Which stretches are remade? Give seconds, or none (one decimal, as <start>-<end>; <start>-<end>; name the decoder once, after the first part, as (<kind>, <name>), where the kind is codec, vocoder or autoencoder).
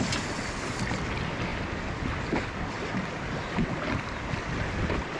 none